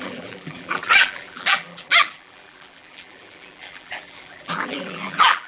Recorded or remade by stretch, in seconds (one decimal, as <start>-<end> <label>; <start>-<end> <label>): 0.0-5.5 remade